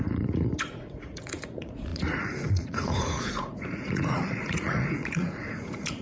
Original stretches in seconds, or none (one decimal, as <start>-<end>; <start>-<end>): none